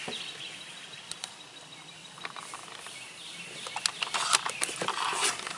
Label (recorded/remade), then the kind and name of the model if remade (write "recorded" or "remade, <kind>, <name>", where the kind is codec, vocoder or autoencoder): recorded